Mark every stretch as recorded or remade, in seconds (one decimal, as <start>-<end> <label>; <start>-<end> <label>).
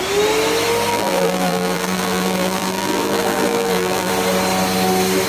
0.0-0.9 recorded; 0.9-4.1 remade; 4.1-5.3 recorded